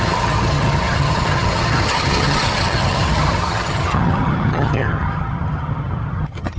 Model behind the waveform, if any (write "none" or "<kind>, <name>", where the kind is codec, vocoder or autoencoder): vocoder, HiFi-GAN